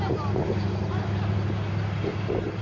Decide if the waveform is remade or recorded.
recorded